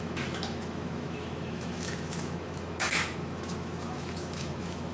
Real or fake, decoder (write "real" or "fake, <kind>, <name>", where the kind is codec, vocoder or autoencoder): fake, autoencoder, DAC-VAE